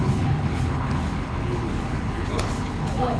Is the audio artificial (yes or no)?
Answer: yes